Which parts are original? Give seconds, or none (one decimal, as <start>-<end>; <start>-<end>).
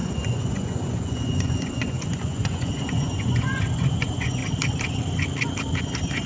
4.4-6.3